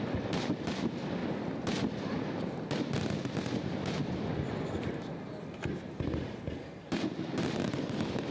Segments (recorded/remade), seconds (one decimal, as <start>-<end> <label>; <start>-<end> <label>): 0.0-7.6 recorded; 7.6-8.3 remade